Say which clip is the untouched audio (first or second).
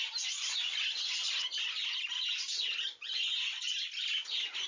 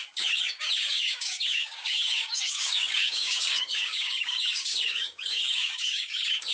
first